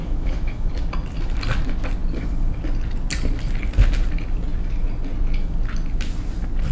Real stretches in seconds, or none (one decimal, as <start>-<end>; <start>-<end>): 0.7-6.7